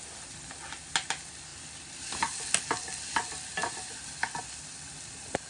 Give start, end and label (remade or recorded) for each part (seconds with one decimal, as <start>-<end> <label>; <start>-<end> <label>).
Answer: 0.0-5.5 recorded

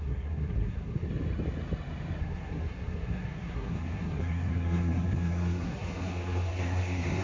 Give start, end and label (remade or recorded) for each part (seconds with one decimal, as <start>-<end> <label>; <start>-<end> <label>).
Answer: 0.0-1.1 remade; 1.1-2.2 recorded; 2.2-7.2 remade

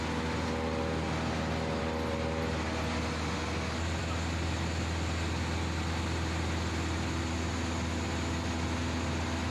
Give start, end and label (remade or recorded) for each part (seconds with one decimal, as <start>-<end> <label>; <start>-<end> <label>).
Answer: 0.0-9.5 recorded

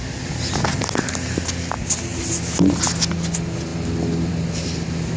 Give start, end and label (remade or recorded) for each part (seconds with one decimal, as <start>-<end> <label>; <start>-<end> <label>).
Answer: 0.0-5.2 recorded